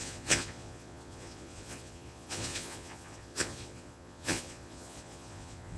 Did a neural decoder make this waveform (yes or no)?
yes